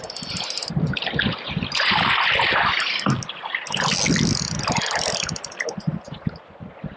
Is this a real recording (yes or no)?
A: yes